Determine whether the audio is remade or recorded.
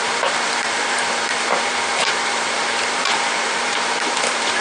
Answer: remade